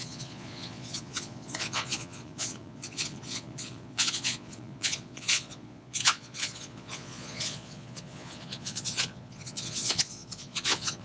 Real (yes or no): no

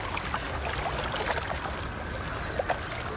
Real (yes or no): yes